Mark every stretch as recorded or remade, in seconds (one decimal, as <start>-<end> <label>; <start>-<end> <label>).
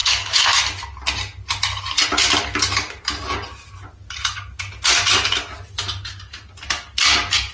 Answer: 0.0-0.6 remade; 0.6-7.5 recorded